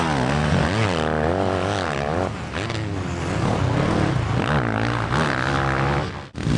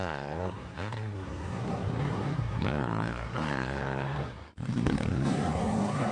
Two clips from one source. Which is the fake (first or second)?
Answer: second